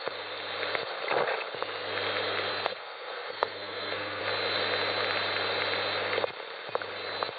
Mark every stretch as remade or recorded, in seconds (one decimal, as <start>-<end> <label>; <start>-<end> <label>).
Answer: 0.0-2.5 recorded; 2.5-4.2 remade; 4.2-7.4 recorded